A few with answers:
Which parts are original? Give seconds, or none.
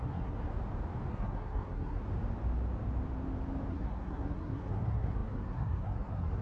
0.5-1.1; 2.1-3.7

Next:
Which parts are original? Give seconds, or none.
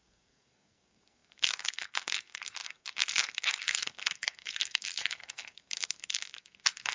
none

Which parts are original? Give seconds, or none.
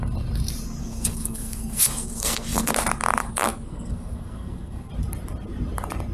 0.0-0.8; 2.7-3.2; 4.9-6.1